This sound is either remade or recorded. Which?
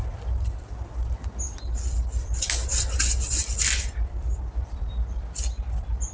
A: recorded